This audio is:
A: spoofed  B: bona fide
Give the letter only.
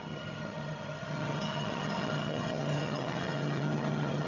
A